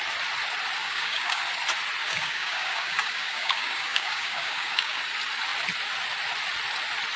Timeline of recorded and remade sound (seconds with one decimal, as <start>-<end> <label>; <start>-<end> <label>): 0.0-0.8 recorded; 0.8-1.4 remade; 1.4-2.0 recorded; 2.0-5.0 remade; 5.0-7.2 recorded